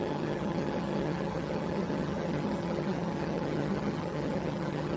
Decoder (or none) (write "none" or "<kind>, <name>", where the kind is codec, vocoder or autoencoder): vocoder, HiFi-GAN